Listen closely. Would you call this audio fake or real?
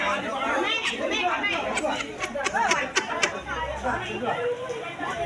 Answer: real